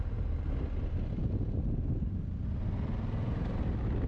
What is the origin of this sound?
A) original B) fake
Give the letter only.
A